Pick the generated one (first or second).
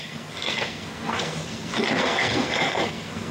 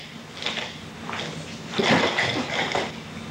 first